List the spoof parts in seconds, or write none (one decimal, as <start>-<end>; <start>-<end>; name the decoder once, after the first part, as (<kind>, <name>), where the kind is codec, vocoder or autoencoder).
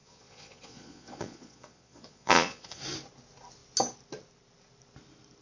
0.0-2.8 (vocoder, Vocos)